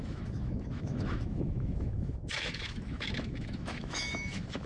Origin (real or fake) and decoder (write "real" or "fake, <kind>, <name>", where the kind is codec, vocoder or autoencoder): fake, autoencoder, DAC-VAE